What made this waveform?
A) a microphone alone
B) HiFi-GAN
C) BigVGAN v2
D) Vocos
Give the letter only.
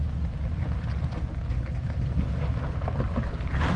A